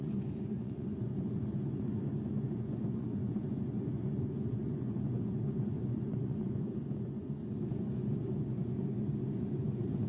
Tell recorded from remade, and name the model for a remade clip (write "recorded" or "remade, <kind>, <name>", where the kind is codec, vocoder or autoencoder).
remade, vocoder, Vocos